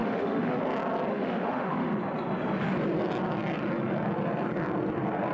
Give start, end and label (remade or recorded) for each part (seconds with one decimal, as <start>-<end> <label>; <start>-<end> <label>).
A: 0.0-0.6 remade; 0.6-1.1 recorded; 1.1-1.9 remade; 1.9-5.3 recorded